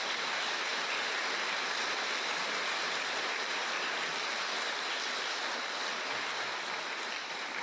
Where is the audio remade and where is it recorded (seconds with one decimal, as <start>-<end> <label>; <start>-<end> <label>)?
0.0-7.6 recorded

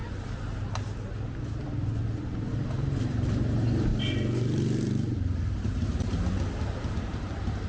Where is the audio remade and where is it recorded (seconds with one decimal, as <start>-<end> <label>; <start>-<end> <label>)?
0.0-1.5 recorded; 1.5-3.9 remade; 3.9-6.9 recorded; 6.9-7.7 remade

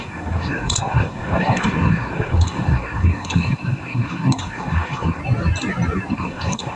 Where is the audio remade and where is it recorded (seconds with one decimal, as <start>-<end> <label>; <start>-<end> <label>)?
0.0-5.2 remade; 5.2-6.1 recorded; 6.1-6.8 remade

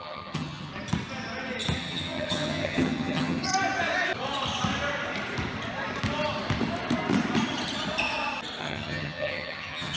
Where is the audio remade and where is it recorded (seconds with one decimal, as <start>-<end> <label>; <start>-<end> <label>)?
0.0-0.7 remade; 0.7-1.8 recorded; 1.8-3.5 remade; 3.5-8.6 recorded; 8.6-10.0 remade

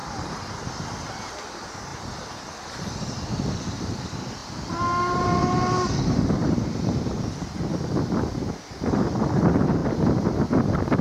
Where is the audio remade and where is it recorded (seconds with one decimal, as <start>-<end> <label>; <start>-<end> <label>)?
0.0-4.4 recorded; 4.4-7.0 remade; 7.0-11.0 recorded

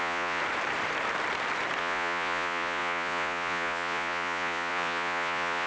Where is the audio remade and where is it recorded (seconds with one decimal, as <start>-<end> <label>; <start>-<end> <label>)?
0.0-0.4 remade; 0.4-1.8 recorded; 1.8-5.7 remade